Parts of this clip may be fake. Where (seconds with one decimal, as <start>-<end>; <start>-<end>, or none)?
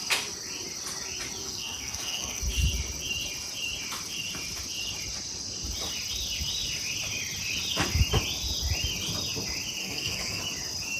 1.4-2.4; 9.8-10.4